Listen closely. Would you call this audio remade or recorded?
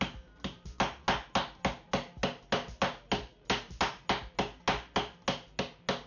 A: recorded